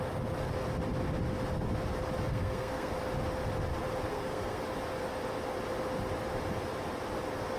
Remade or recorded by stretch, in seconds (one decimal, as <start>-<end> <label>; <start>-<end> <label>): 0.0-2.3 recorded; 2.3-2.9 remade; 2.9-4.1 recorded; 4.1-4.6 remade; 4.6-7.6 recorded

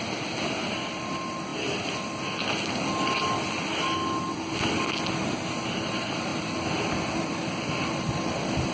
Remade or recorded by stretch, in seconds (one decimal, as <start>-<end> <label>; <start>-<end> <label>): 0.0-8.7 recorded